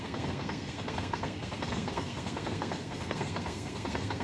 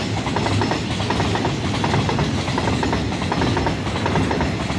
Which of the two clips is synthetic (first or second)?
first